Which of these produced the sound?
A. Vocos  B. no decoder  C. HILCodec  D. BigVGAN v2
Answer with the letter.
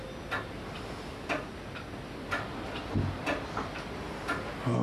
B